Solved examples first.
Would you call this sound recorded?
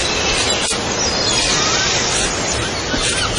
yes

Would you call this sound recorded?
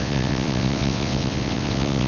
no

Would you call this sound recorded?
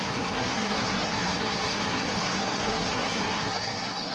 no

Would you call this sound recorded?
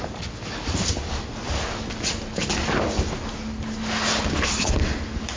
yes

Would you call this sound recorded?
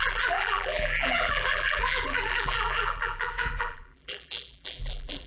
no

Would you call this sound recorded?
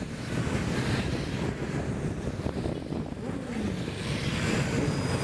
yes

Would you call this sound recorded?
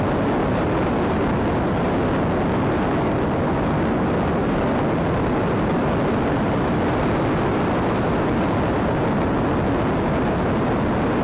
yes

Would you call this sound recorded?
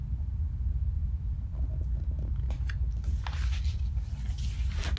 yes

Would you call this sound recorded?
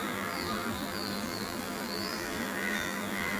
no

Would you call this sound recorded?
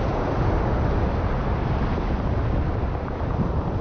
yes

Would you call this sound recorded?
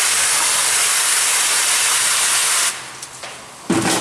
yes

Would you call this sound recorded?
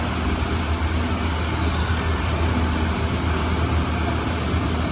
yes